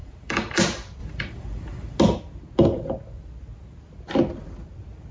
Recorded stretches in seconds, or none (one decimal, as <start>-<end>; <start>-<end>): 0.6-1.0; 2.0-5.1